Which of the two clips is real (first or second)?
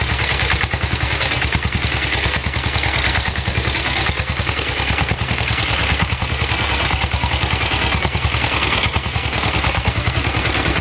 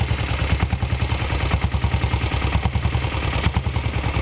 second